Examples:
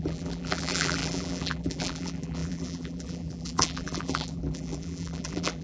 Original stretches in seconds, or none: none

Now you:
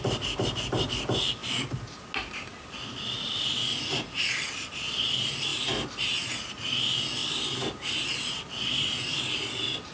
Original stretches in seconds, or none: 0.0-7.2; 9.4-9.9